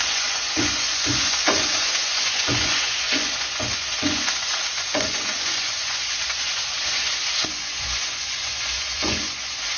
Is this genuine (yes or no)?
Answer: no